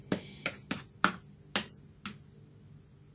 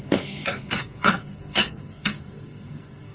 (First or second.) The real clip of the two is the first